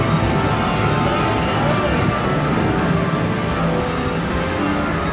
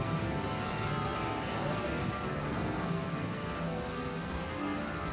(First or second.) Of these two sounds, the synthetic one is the second